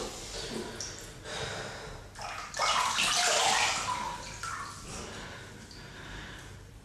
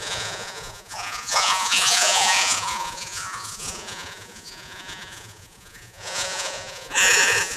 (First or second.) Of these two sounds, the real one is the first